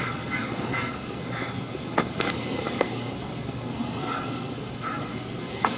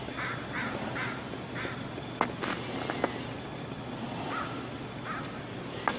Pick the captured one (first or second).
second